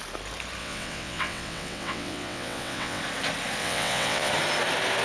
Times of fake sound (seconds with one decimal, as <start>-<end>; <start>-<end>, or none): 0.6-3.0; 3.6-4.3

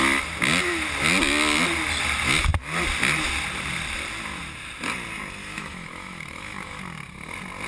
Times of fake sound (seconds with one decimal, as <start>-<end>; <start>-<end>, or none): 5.4-6.8

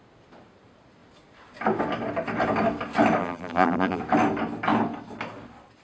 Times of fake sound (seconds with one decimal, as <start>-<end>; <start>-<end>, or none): 3.2-4.0

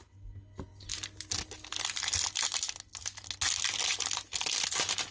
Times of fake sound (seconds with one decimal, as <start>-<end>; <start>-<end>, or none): none

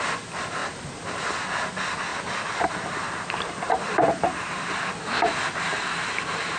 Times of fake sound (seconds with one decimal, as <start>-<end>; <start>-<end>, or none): 0.6-1.3; 2.1-4.9; 5.7-6.6